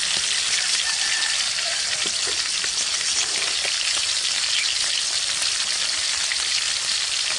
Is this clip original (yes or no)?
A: yes